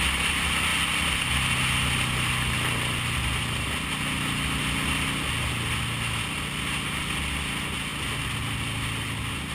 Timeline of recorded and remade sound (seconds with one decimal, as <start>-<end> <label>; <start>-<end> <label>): 0.0-9.5 recorded